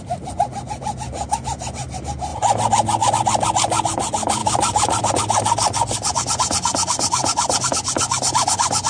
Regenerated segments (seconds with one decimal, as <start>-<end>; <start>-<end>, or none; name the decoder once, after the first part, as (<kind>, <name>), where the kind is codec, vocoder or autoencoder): 4.4-5.1 (vocoder, BigVGAN v2)